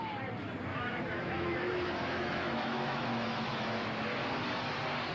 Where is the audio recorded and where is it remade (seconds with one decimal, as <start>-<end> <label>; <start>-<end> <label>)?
0.0-0.7 recorded; 0.7-3.8 remade; 3.8-5.1 recorded